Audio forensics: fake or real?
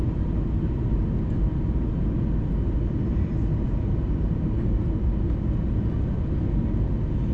real